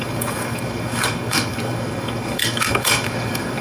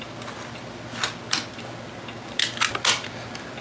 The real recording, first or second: second